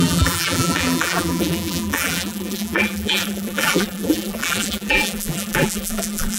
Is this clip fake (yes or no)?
yes